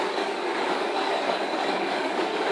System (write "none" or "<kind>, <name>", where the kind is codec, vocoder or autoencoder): codec, DAC